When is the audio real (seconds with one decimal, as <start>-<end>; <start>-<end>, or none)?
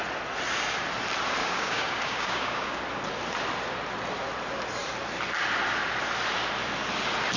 0.0-1.4; 2.8-7.4